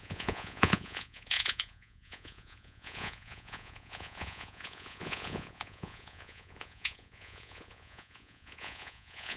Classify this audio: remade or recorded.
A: remade